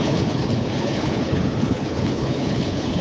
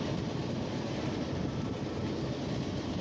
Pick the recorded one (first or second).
second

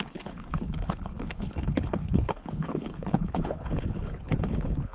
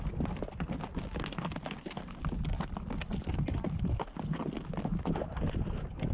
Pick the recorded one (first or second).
second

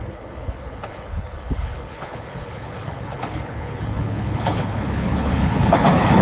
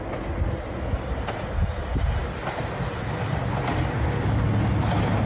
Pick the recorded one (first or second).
second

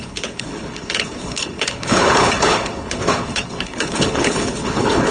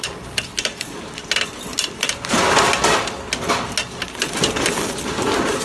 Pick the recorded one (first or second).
second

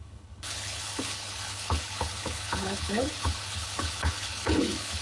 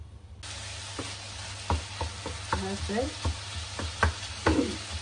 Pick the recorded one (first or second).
second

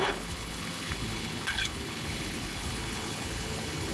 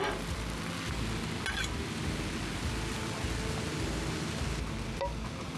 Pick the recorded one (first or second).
second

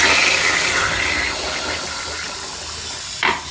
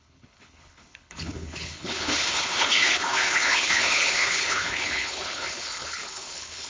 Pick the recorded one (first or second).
first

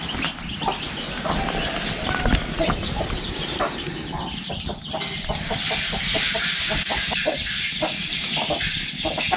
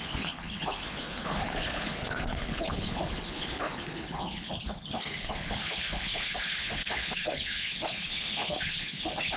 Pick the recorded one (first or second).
first